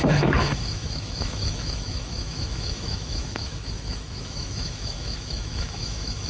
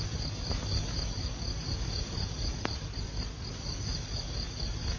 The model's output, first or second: first